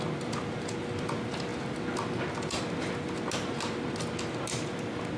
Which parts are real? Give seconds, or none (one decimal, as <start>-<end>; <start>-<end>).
0.0-5.2